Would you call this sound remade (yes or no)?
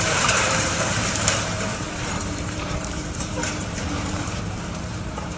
yes